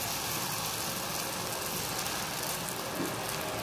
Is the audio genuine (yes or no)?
yes